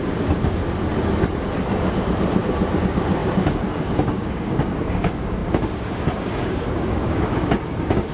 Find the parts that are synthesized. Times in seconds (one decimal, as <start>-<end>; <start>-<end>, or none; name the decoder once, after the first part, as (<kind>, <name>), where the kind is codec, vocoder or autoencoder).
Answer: 0.0-0.6 (codec, DAC); 2.8-8.1